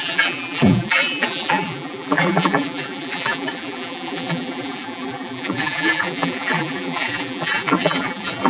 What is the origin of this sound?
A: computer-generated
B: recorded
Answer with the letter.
A